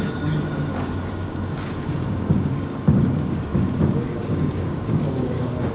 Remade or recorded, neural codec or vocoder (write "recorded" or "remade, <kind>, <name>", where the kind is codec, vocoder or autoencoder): remade, codec, DAC